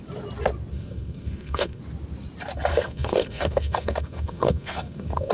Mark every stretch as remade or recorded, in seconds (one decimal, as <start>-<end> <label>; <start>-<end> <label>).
0.0-0.7 recorded; 0.7-1.8 remade; 1.8-2.7 recorded; 2.7-5.3 remade